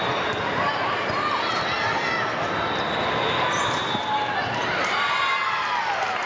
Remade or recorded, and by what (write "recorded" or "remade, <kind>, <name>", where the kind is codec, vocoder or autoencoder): recorded